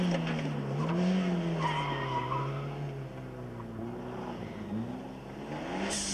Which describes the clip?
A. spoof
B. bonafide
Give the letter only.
B